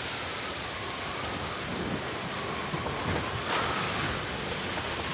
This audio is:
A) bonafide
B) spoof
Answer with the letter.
A